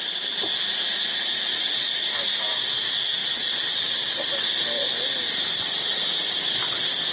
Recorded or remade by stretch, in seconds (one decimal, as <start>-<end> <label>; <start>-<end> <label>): 0.0-7.1 recorded